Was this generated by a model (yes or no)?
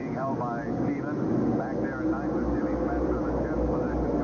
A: no